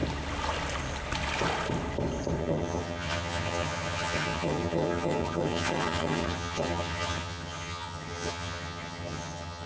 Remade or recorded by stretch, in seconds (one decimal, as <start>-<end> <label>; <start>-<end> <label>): 0.0-2.4 recorded; 2.4-9.7 remade